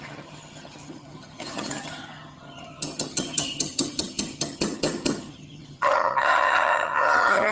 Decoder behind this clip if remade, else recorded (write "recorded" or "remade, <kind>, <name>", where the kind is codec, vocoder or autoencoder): remade, vocoder, HiFi-GAN